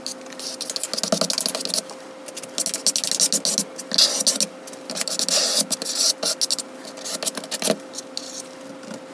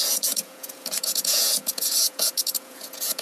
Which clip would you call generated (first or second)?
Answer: second